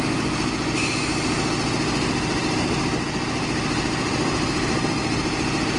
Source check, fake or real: real